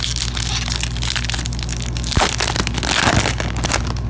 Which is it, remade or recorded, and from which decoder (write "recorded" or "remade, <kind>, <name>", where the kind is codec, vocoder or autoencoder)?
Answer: recorded